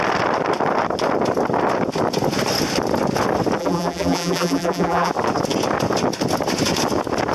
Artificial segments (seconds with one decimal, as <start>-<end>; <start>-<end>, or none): 3.6-5.1